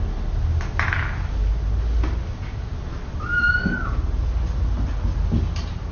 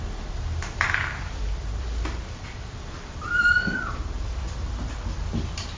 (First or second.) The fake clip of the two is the second